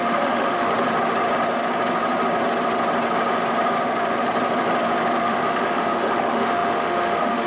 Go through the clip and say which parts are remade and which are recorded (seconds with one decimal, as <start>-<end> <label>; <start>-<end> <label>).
0.0-0.7 remade; 0.7-5.2 recorded; 5.2-7.5 remade

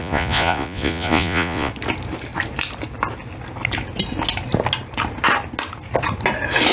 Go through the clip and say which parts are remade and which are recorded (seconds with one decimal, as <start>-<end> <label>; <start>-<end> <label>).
0.0-1.7 remade; 1.7-6.7 recorded

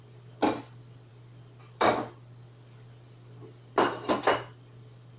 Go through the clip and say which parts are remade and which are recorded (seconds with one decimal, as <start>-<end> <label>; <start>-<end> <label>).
0.0-5.2 recorded

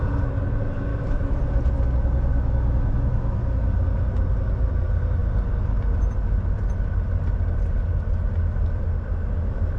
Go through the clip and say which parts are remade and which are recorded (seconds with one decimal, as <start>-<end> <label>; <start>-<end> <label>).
0.0-0.9 recorded; 0.9-1.4 remade; 1.4-2.3 recorded; 2.3-3.7 remade; 3.7-9.8 recorded